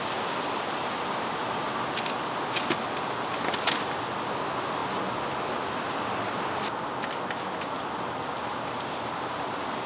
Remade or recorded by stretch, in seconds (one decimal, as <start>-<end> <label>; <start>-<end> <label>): 0.0-9.9 recorded